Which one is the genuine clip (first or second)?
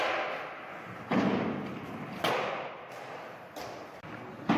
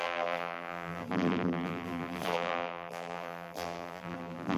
first